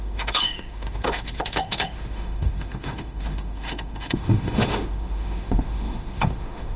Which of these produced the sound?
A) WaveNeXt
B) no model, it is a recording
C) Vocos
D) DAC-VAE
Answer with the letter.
D